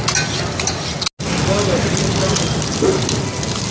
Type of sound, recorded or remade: recorded